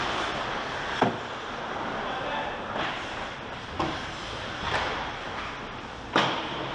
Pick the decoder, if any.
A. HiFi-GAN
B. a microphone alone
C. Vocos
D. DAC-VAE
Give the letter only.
B